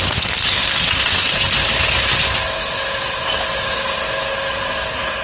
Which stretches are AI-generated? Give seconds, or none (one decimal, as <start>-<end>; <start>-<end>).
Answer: none